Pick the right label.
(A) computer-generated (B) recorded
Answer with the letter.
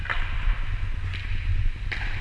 B